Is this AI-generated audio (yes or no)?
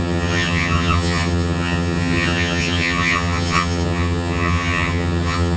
yes